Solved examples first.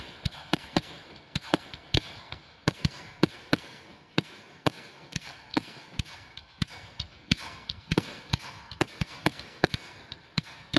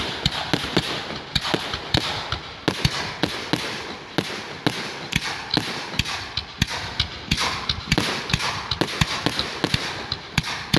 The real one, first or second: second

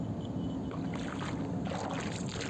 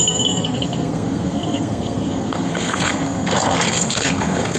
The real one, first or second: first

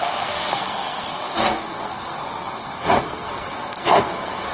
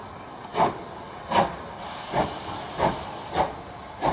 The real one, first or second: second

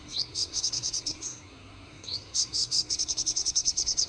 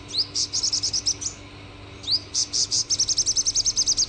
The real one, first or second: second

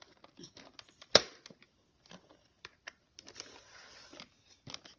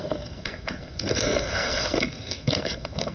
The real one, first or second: first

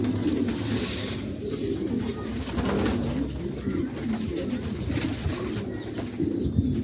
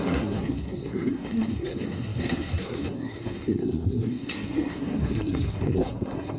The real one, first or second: first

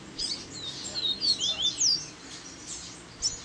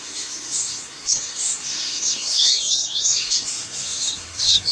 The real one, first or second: first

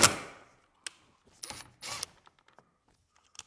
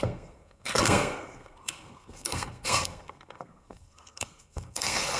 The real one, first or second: first